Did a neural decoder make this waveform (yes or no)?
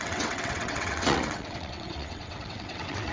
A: yes